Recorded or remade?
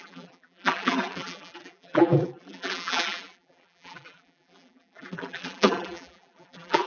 remade